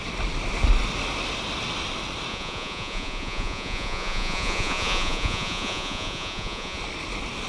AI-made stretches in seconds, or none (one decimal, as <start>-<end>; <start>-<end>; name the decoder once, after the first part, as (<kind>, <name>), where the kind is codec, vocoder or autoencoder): 2.3-6.8 (vocoder, Vocos)